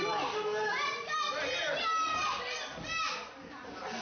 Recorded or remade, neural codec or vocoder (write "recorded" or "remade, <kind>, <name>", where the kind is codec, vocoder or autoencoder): recorded